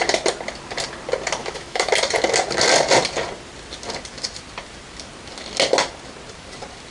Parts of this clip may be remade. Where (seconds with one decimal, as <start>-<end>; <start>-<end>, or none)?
1.4-1.9